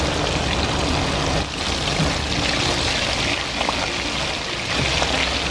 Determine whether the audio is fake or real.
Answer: real